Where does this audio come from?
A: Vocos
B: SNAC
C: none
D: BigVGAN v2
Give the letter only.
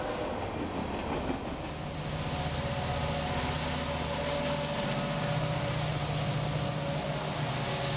C